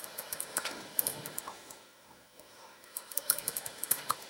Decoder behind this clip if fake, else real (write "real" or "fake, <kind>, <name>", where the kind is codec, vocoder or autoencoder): fake, autoencoder, DAC-VAE